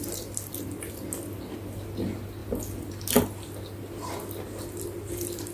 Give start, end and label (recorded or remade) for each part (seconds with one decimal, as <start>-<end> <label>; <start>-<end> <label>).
0.0-5.5 recorded